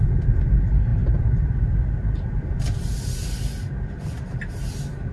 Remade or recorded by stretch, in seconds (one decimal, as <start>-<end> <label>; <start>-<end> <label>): 0.0-5.1 recorded